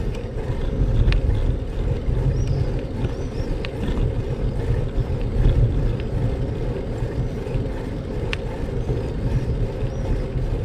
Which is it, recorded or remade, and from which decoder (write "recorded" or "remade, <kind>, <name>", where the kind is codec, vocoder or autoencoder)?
recorded